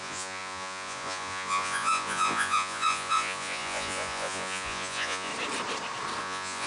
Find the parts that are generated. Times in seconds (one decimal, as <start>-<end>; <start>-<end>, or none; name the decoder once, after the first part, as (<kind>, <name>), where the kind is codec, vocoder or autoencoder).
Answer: 0.0-5.3 (vocoder, Vocos); 6.2-6.7